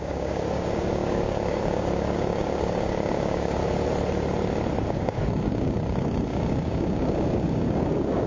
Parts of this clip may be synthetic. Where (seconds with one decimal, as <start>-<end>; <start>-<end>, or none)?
0.0-3.6; 4.9-8.3